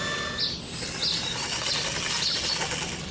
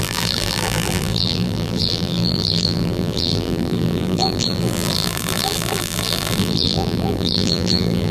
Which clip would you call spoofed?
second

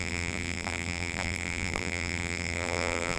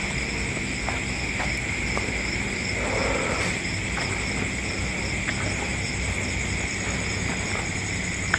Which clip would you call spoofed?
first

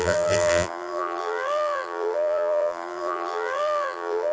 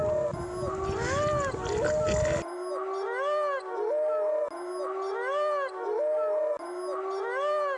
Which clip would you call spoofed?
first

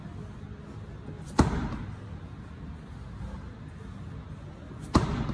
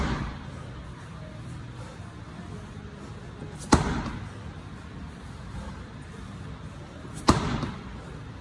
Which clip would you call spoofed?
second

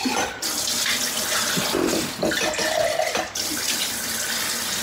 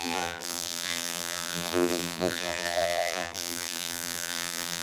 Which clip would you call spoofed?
second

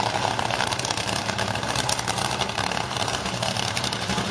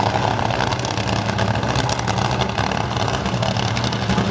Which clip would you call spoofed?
first